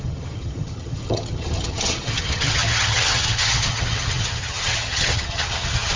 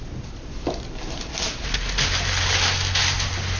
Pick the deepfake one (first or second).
first